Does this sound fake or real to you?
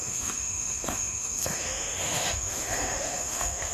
fake